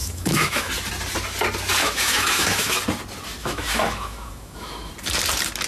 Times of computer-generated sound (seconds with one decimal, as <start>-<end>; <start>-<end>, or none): 0.0-0.7; 1.8-2.8; 3.4-4.9